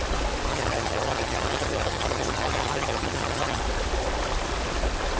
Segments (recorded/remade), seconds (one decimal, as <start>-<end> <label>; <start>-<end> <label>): 0.0-0.5 recorded; 0.5-3.6 remade; 3.6-5.2 recorded